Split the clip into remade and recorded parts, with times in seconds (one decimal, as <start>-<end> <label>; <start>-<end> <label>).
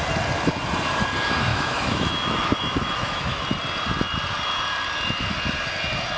0.0-1.5 recorded; 1.5-3.4 remade; 3.4-6.2 recorded